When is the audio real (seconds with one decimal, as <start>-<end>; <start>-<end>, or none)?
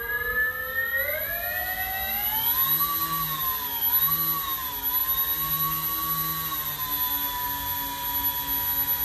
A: 0.0-9.0